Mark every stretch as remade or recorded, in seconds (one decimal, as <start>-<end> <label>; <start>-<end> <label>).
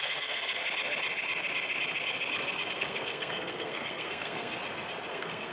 0.0-0.6 remade; 0.6-2.7 recorded; 2.7-4.5 remade; 4.5-5.1 recorded; 5.1-5.5 remade